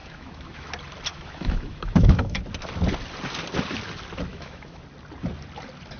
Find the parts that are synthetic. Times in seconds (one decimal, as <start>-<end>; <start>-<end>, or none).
0.0-0.7; 1.1-2.4; 4.3-4.8